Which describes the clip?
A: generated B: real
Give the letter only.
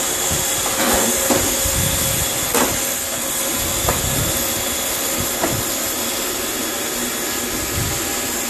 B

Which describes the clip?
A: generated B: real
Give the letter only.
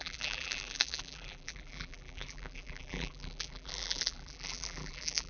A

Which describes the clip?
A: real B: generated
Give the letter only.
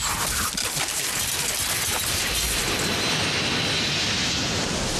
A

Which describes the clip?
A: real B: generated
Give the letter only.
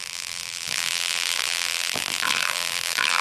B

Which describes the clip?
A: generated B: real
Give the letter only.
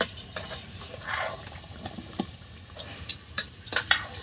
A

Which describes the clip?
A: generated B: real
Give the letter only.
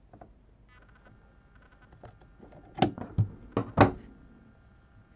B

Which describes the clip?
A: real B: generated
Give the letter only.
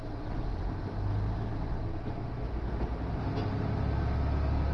A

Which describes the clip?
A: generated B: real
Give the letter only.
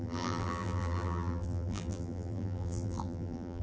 A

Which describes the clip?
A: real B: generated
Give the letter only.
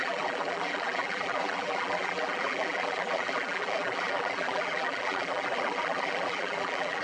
B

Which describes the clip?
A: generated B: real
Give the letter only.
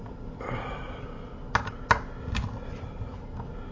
B